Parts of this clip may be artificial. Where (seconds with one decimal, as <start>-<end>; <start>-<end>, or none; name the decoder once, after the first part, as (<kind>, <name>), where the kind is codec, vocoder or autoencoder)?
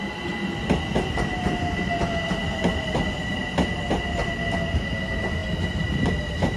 2.4-3.4 (vocoder, BigVGAN v2)